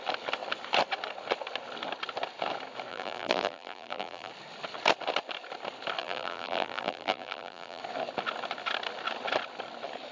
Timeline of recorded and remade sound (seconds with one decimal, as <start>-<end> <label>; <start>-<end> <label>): 0.0-2.9 recorded; 2.9-4.3 remade; 4.3-6.0 recorded; 6.0-7.8 remade; 7.8-10.1 recorded